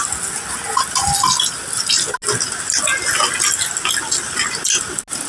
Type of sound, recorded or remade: recorded